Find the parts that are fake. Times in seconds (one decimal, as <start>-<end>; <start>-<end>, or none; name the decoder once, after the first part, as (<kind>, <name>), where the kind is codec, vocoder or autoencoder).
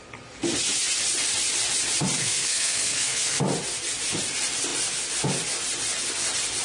2.2-3.4 (codec, SNAC)